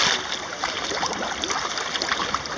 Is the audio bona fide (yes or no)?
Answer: no